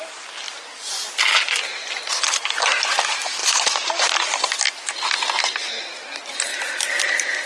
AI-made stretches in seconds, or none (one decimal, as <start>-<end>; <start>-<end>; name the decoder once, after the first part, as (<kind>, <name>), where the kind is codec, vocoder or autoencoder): none